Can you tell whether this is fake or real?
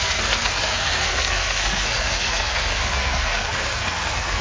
fake